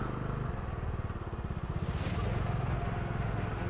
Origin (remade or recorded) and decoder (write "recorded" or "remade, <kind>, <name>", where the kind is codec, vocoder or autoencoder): recorded